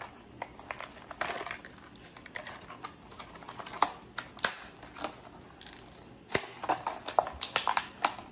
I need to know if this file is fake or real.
real